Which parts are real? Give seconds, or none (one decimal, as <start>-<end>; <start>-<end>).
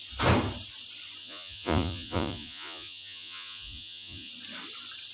0.0-1.2; 4.3-5.1